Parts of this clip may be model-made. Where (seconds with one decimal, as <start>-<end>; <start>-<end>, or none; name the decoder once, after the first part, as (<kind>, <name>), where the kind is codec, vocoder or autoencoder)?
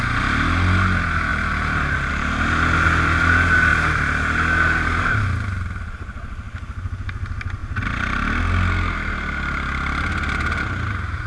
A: none